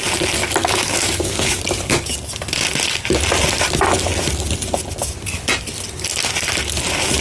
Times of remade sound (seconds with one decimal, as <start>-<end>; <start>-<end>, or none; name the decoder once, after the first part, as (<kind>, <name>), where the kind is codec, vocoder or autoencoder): 0.6-1.6 (autoencoder, DAC-VAE)